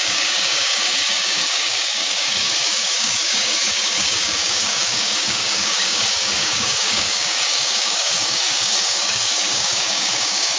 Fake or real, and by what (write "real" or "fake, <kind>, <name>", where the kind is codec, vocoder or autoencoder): fake, codec, DAC